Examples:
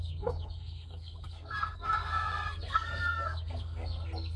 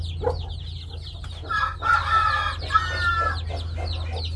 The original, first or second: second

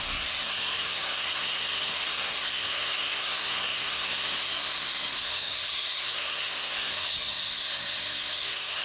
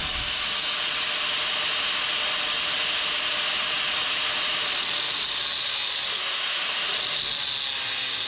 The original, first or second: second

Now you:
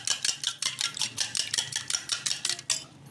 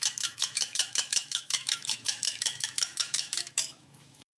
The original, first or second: first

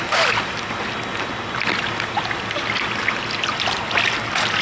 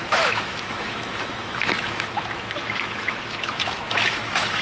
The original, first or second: first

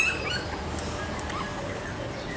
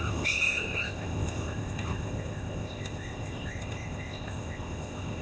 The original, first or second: first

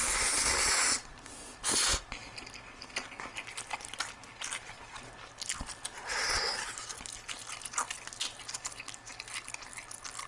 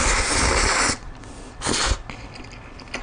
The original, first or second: first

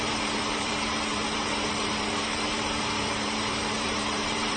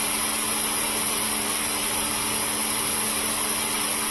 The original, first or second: second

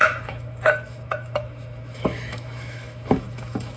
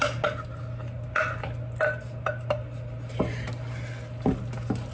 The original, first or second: second